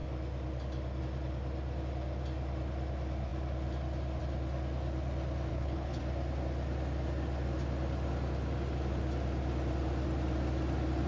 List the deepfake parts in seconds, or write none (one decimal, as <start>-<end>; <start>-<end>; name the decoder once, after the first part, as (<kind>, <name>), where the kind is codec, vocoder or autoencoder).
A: 5.5-6.0 (codec, HILCodec)